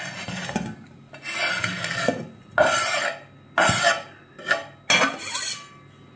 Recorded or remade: recorded